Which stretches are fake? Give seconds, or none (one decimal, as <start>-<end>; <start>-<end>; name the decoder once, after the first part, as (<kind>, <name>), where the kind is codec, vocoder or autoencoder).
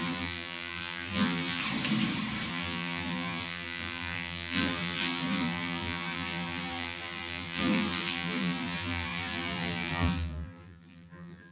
0.0-1.6 (vocoder, BigVGAN v2); 2.5-11.5